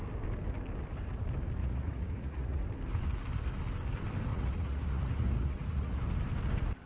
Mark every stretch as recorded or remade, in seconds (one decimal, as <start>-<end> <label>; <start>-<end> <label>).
0.0-1.6 recorded; 1.6-2.6 remade; 2.6-4.3 recorded; 4.3-6.0 remade; 6.0-6.9 recorded